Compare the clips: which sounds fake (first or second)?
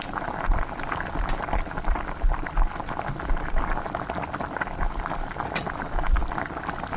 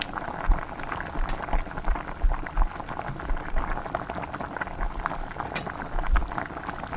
first